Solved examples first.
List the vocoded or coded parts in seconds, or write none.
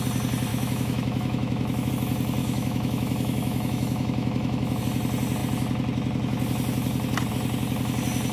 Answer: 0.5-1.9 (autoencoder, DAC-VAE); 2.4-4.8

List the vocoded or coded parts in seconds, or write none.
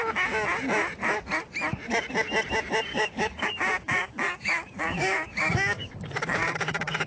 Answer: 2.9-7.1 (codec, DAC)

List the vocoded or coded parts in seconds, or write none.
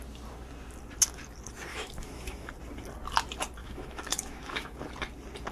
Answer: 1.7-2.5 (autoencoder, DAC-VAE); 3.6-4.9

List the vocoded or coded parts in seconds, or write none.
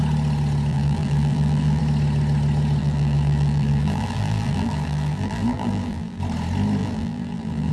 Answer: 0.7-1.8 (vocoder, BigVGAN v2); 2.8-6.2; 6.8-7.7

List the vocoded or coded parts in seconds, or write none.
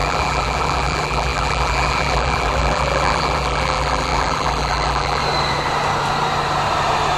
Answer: 0.0-5.2 (vocoder, BigVGAN v2)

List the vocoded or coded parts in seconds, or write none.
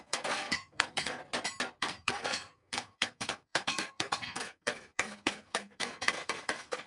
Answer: 0.0-1.2 (codec, SNAC); 1.8-6.9